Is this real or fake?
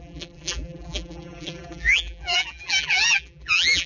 fake